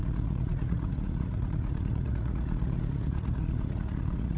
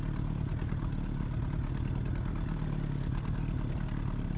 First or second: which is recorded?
second